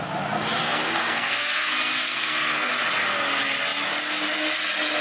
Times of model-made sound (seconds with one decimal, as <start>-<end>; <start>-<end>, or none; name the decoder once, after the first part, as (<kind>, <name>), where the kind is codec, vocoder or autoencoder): 0.6-2.7 (codec, SNAC)